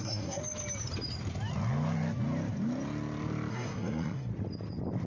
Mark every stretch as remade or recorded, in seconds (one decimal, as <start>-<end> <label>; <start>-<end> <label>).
0.0-0.4 remade; 0.4-3.5 recorded; 3.5-4.3 remade; 4.3-5.1 recorded